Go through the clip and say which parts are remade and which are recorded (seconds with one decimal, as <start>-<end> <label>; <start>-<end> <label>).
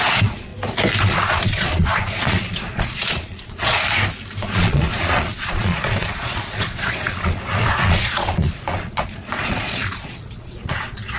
0.0-0.5 remade; 0.5-1.0 recorded; 1.0-3.8 remade; 3.8-4.4 recorded; 4.4-11.2 remade